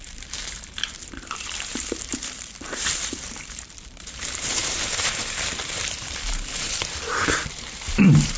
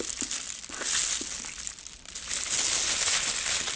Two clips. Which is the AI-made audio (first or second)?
first